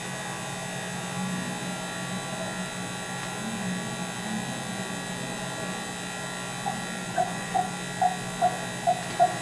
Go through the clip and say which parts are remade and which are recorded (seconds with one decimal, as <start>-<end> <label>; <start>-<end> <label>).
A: 0.0-7.0 recorded; 7.0-7.7 remade; 7.7-9.4 recorded